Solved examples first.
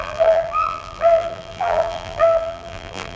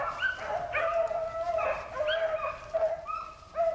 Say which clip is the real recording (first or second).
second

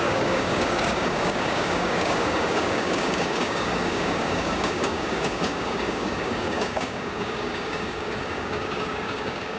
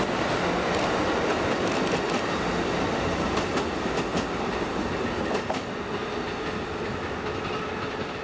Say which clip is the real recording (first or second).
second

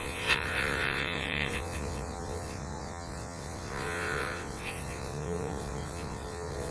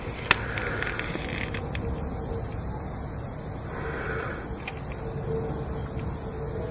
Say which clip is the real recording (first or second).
second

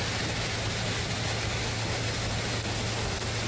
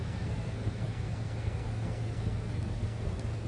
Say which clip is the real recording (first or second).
first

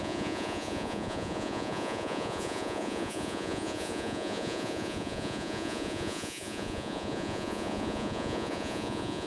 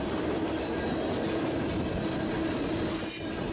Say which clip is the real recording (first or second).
second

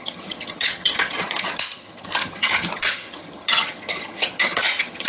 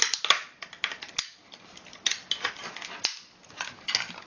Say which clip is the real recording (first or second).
second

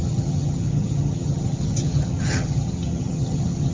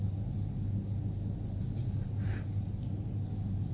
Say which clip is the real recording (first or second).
second